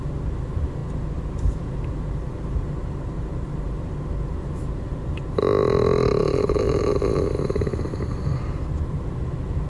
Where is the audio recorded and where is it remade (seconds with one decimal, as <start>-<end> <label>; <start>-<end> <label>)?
0.0-0.8 recorded; 0.8-5.4 remade; 5.4-6.2 recorded; 6.2-6.8 remade; 6.8-7.7 recorded; 7.7-9.0 remade; 9.0-9.7 recorded